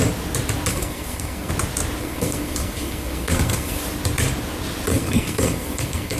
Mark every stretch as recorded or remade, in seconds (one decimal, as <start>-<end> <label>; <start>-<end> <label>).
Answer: 0.0-0.7 recorded; 0.7-1.5 remade; 1.5-2.0 recorded; 2.0-3.8 remade; 3.8-4.9 recorded; 4.9-6.2 remade